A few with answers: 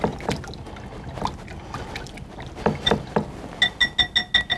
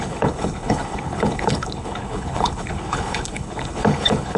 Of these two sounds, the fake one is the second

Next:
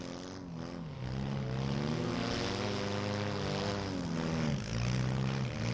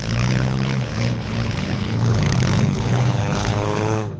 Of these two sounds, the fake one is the second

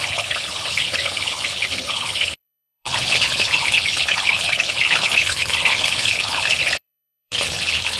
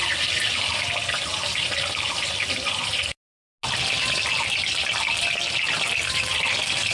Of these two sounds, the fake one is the first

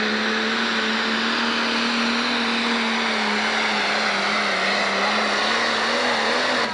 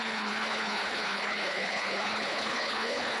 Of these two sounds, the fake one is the second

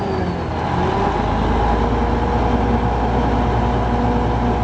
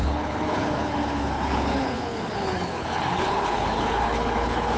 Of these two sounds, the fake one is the second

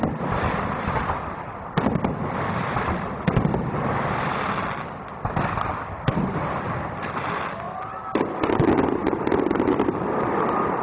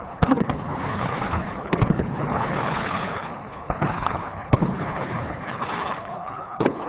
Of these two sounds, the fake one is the second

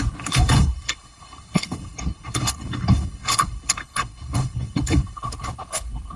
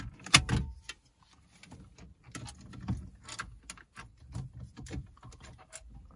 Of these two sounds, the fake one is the first